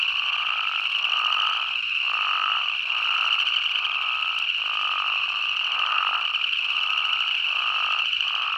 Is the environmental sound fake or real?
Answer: real